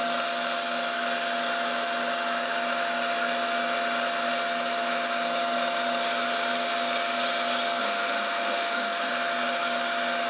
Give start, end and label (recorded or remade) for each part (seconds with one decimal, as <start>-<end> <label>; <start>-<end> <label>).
0.0-7.8 recorded; 7.8-9.1 remade; 9.1-10.3 recorded